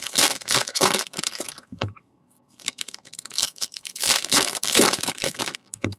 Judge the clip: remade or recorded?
remade